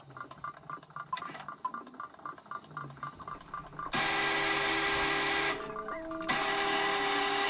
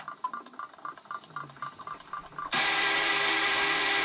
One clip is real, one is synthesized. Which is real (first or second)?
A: first